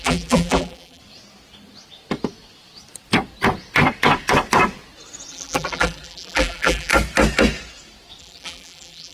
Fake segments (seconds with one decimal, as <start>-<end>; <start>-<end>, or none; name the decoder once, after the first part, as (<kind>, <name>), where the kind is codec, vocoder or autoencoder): 0.0-1.0 (vocoder, BigVGAN v2); 5.3-6.9; 8.2-9.1